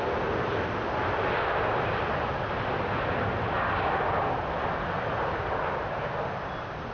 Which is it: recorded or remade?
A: recorded